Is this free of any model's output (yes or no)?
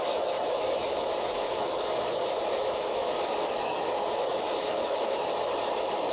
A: no